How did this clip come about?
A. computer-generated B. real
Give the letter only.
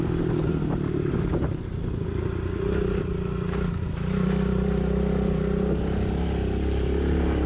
B